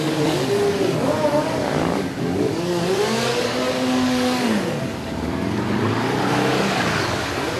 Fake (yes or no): yes